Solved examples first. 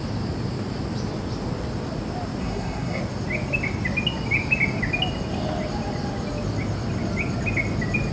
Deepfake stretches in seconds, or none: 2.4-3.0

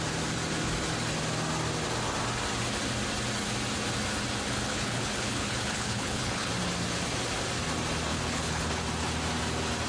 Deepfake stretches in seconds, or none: 4.7-6.5; 8.1-8.8

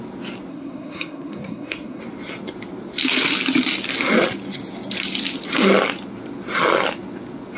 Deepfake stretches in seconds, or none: 0.5-2.0